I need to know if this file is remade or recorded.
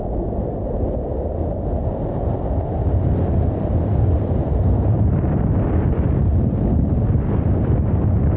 recorded